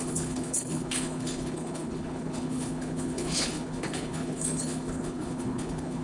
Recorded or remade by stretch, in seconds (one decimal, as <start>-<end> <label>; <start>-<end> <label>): 0.0-6.0 remade